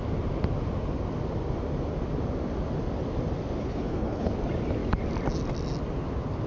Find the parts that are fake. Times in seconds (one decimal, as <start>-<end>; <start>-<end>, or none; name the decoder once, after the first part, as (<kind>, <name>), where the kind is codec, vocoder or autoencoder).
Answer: 3.6-4.3 (codec, HILCodec)